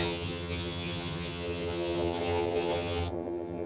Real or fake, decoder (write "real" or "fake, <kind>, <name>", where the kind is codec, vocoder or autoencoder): fake, vocoder, HiFi-GAN